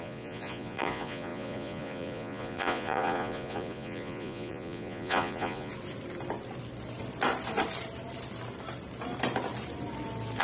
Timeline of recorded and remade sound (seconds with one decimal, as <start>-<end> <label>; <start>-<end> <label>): 0.0-5.7 remade; 5.7-10.4 recorded